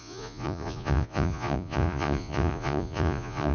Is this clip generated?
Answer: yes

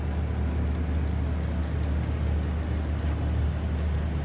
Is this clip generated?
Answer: no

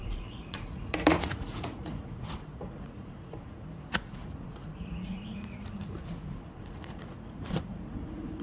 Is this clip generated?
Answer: yes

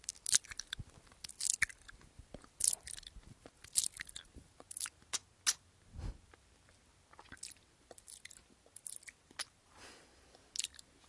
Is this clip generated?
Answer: no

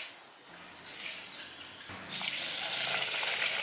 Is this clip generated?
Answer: no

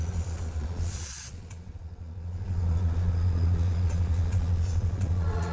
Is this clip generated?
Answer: yes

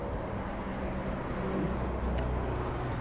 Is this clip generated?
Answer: no